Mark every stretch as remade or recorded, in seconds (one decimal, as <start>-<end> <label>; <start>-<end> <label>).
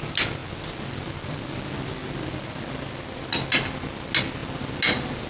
0.0-5.3 recorded